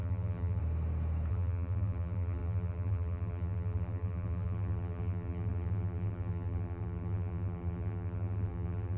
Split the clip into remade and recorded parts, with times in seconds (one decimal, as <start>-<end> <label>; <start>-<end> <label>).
0.0-0.6 remade; 0.6-1.3 recorded; 1.3-9.0 remade